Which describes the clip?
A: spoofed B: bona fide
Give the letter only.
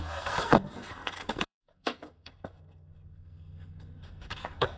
A